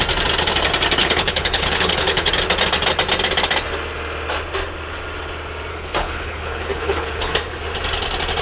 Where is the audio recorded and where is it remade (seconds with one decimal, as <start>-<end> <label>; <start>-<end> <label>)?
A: 0.0-1.0 recorded; 1.0-2.3 remade; 2.3-5.7 recorded; 5.7-7.3 remade; 7.3-8.4 recorded